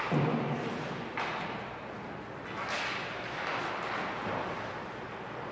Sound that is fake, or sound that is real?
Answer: real